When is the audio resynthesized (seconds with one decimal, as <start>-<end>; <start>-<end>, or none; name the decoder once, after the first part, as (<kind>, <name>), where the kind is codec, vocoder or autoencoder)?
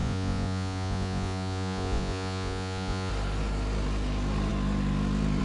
0.0-3.1 (vocoder, Vocos)